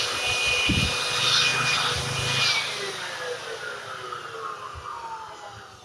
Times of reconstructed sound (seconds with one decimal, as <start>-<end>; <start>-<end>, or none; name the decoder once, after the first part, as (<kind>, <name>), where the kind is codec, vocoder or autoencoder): none